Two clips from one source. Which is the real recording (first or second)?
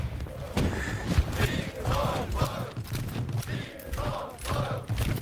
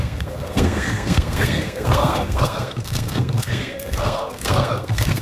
first